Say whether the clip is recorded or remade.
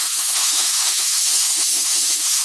remade